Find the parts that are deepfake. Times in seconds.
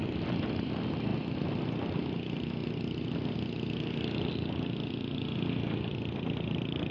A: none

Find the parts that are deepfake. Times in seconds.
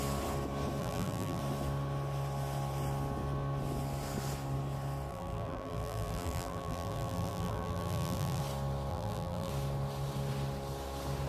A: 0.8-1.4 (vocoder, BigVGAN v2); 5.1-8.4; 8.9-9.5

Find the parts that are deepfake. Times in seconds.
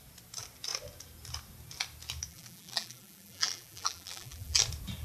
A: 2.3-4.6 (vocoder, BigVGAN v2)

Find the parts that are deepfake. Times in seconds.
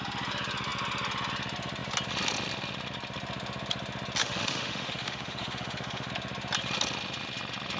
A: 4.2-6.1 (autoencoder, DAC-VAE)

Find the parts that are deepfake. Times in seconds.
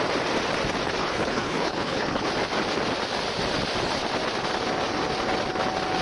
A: 1.0-2.3 (codec, HILCodec)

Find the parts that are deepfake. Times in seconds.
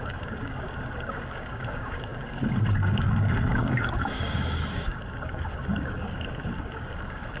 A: 0.0-7.4 (codec, DAC)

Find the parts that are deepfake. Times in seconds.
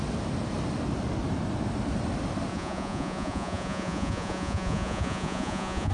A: 2.5-5.9 (vocoder, Vocos)